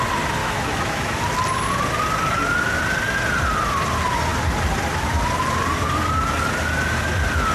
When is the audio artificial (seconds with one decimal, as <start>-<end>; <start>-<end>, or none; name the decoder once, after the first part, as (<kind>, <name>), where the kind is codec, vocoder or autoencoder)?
0.4-1.2 (autoencoder, DAC-VAE)